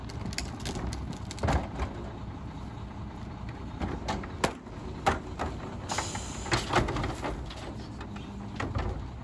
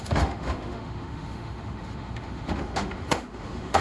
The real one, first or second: first